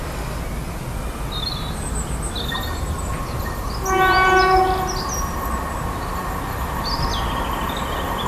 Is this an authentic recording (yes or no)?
yes